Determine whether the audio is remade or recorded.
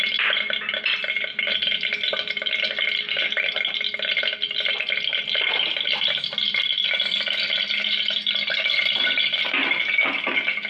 recorded